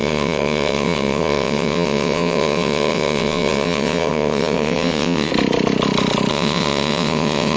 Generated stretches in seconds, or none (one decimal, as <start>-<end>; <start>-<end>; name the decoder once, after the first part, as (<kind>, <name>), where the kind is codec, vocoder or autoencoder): 0.0-5.3 (vocoder, WaveNeXt); 6.3-7.6